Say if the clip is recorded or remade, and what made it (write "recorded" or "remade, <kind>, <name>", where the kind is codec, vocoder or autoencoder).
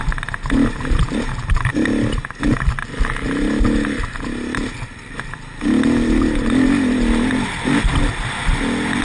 recorded